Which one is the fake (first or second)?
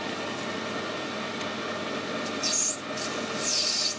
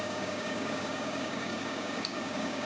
second